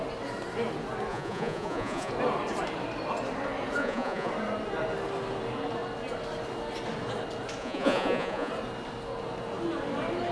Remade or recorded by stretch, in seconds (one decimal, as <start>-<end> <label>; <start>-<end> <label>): 0.0-1.1 recorded; 1.1-2.1 remade; 2.1-3.8 recorded; 3.8-4.3 remade; 4.3-7.6 recorded; 7.6-8.5 remade; 8.5-10.3 recorded